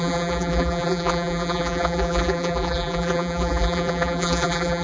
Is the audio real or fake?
fake